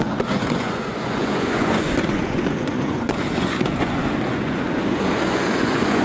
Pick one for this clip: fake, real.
fake